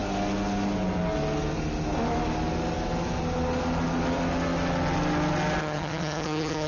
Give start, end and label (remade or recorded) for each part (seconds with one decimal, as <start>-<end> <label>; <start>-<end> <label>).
0.0-5.6 recorded; 5.6-6.7 remade